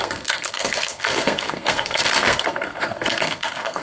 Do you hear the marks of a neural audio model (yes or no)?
yes